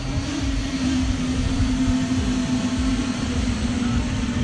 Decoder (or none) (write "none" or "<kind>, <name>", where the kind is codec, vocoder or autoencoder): none